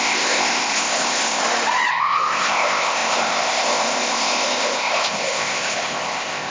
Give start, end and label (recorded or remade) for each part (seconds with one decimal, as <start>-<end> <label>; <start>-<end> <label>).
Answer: 0.0-1.4 remade; 1.4-1.9 recorded; 1.9-6.5 remade